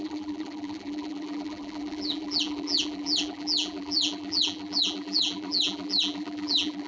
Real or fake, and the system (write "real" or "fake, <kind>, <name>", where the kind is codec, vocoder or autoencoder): fake, vocoder, BigVGAN v2